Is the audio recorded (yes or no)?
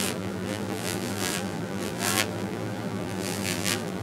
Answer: no